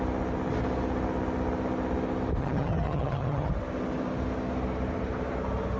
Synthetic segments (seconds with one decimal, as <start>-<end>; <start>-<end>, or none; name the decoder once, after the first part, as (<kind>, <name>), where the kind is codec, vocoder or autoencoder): 2.4-3.5 (vocoder, HiFi-GAN)